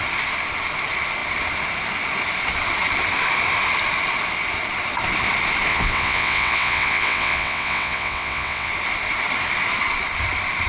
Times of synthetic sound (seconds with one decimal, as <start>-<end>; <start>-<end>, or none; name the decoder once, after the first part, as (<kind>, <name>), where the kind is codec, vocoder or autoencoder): 5.7-8.7 (vocoder, WaveNeXt)